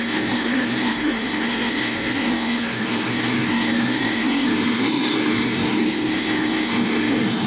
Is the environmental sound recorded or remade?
remade